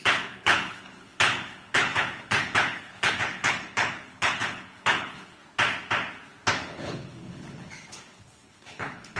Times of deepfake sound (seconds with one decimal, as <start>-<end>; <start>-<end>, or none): 0.0-5.4; 6.5-9.2